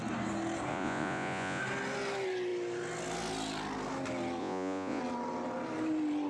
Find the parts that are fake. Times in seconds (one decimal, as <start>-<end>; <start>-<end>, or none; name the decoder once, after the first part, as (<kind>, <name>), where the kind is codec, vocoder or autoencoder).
0.7-1.6 (vocoder, Vocos); 4.4-5.0

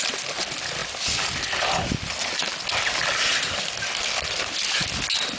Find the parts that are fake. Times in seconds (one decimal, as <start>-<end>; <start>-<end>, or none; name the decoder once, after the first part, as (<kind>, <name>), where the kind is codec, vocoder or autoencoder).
none

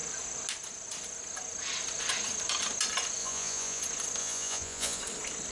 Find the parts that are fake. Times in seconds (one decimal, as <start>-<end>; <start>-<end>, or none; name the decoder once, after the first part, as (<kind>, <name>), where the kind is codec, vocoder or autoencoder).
3.2-3.8 (vocoder, Vocos); 4.2-5.0

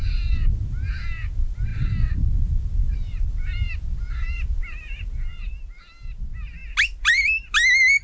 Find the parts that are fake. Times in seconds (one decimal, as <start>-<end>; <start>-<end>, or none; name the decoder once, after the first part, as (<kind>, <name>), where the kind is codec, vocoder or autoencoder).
none

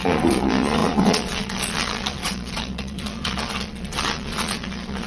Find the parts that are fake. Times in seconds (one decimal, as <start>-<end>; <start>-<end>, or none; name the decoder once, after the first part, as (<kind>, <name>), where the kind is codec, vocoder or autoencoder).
0.0-5.1 (vocoder, Vocos)

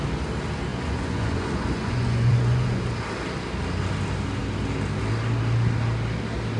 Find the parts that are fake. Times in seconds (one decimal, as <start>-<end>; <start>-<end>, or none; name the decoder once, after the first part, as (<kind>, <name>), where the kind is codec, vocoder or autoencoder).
0.7-2.8 (vocoder, Vocos)

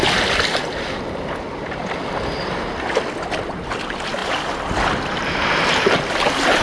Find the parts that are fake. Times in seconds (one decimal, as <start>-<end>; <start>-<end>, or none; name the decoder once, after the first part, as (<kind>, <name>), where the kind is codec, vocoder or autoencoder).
none

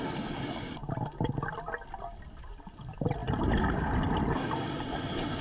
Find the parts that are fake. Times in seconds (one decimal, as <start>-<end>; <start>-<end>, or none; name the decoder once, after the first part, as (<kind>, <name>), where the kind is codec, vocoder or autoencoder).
none